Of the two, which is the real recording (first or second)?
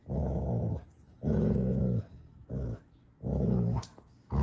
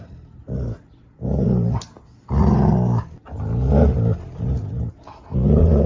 second